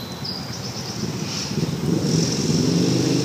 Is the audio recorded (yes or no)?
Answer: yes